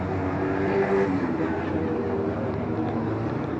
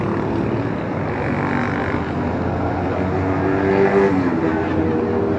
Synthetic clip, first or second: first